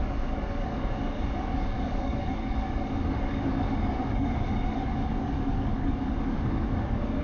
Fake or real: fake